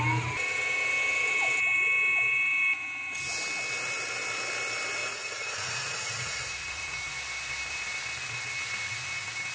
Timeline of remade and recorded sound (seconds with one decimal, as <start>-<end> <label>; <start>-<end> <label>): 0.0-5.0 recorded; 5.0-7.1 remade; 7.1-9.5 recorded